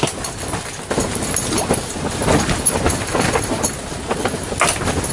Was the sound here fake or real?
real